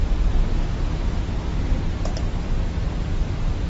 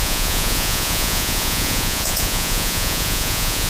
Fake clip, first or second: second